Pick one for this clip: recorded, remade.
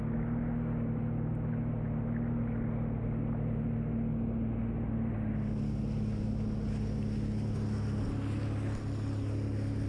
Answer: recorded